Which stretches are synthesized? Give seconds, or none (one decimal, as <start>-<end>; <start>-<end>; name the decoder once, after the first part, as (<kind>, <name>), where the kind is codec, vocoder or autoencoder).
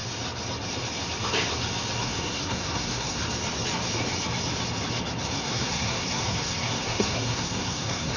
2.0-3.2 (codec, SNAC); 5.2-8.2